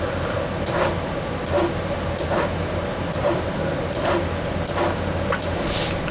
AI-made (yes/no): yes